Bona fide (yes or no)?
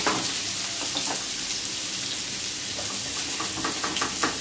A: yes